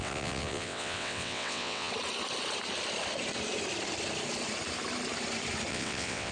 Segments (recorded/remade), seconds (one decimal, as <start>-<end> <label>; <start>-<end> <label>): 0.0-1.9 remade; 1.9-5.7 recorded; 5.7-6.3 remade